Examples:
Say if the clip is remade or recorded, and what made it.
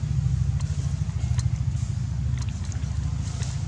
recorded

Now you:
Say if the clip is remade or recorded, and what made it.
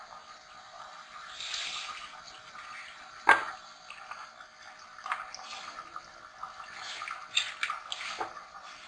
recorded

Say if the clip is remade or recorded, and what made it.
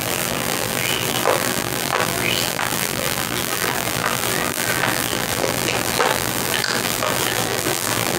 remade, vocoder, BigVGAN v2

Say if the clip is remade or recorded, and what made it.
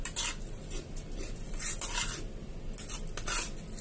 recorded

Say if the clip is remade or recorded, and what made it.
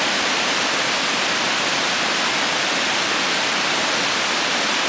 remade, vocoder, BigVGAN v2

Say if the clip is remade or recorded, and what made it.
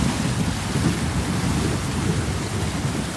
recorded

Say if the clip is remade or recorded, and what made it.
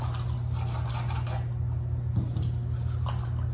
recorded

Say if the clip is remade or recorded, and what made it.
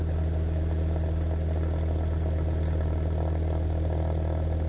recorded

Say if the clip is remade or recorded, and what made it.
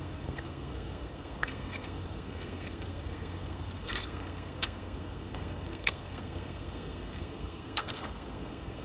remade, codec, SNAC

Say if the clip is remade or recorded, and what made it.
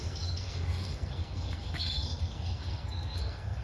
remade, codec, SNAC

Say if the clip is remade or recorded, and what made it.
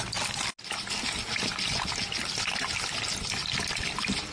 recorded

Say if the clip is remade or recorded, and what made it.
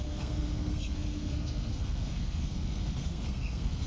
remade, codec, SNAC